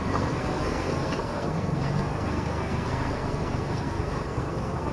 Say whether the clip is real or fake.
fake